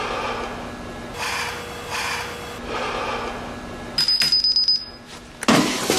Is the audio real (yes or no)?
yes